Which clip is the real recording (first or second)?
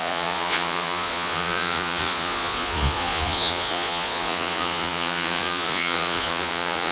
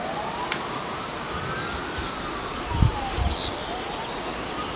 second